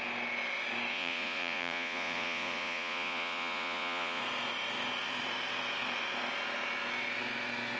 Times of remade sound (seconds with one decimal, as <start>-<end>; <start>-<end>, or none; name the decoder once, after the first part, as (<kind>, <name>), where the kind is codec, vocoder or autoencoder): 0.9-4.2 (vocoder, Vocos)